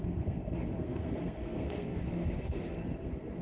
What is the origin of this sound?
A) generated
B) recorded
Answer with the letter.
A